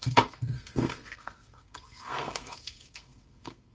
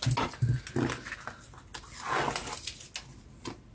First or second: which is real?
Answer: second